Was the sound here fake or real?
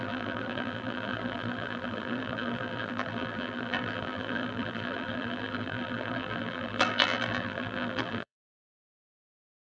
fake